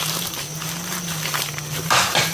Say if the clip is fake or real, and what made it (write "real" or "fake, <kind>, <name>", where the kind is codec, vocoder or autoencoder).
real